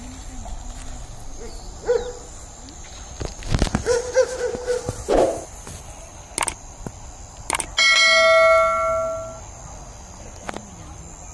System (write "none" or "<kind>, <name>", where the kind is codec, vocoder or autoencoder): none